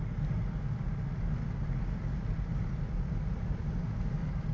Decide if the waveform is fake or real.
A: real